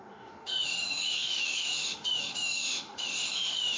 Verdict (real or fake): fake